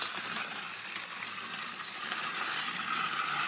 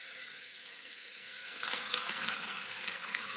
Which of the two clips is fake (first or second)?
second